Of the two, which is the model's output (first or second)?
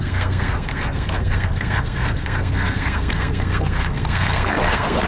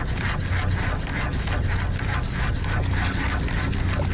first